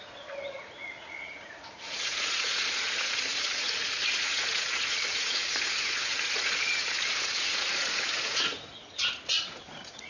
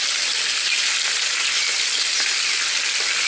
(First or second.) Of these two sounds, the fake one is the first